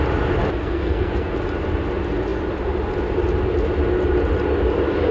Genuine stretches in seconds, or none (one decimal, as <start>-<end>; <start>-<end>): 0.0-0.6; 1.3-5.1